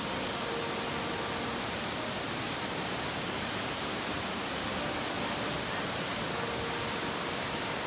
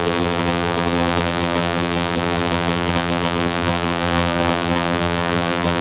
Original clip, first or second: first